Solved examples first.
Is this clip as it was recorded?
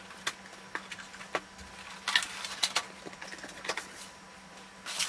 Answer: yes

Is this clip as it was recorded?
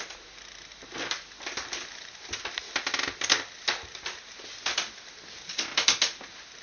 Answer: yes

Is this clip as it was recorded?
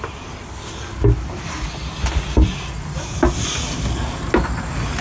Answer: yes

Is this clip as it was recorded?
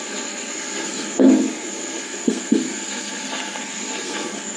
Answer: no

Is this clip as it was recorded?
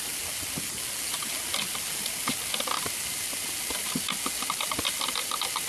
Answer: yes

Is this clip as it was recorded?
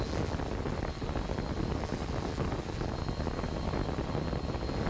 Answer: yes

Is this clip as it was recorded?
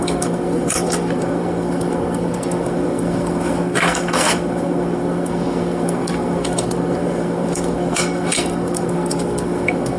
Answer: no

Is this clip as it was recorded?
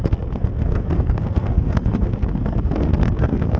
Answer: no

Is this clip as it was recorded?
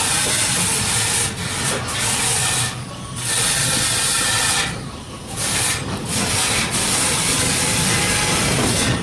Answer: yes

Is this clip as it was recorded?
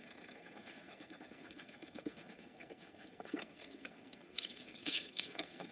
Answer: no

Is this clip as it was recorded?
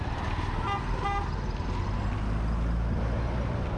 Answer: yes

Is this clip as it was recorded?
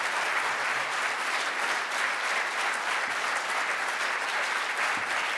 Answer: yes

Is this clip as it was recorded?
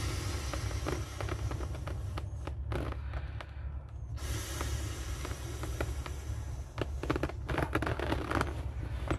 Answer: yes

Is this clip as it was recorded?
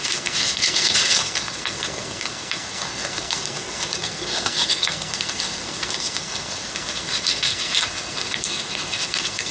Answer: no